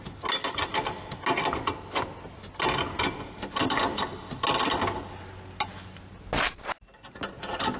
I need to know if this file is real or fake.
real